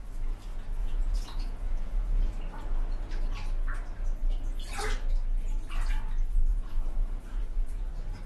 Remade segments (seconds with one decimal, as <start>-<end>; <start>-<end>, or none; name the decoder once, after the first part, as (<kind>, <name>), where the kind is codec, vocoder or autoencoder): 0.8-2.3 (vocoder, Vocos); 6.5-7.9